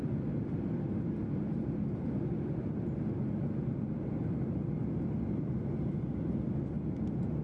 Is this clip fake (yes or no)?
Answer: no